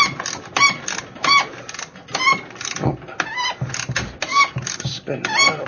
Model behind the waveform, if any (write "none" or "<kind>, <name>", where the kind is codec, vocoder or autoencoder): none